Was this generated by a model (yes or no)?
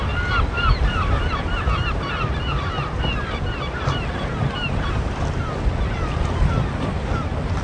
yes